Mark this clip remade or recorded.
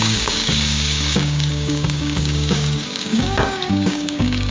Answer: remade